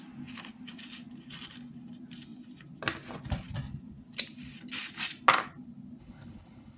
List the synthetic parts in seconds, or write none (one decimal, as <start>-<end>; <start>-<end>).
6.0-6.8